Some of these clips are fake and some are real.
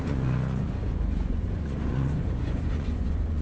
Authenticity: fake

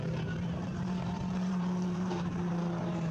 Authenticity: fake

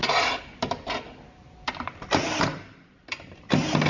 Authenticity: real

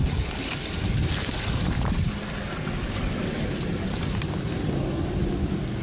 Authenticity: real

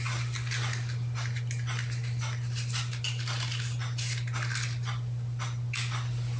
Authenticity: real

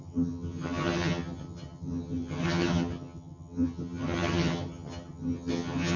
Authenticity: fake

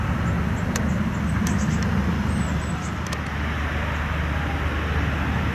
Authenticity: real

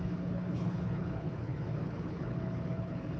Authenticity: fake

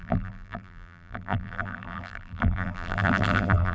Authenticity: fake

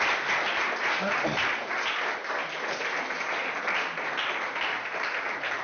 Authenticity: real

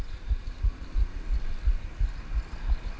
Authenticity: real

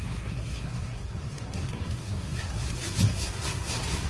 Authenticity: fake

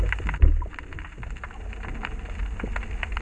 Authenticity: real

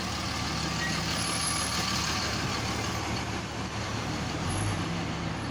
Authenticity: real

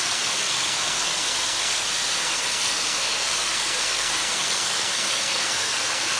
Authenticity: fake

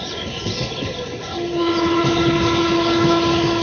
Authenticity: fake